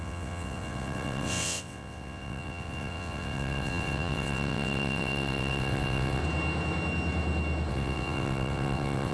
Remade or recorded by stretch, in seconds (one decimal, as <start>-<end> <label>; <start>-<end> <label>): 0.0-6.2 remade; 6.2-7.7 recorded; 7.7-9.1 remade